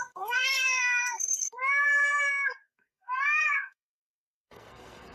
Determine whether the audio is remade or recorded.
remade